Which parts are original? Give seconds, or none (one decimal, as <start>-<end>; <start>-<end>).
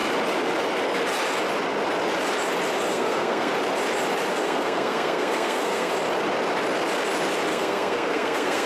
0.0-2.9; 3.5-4.3; 5.9-7.5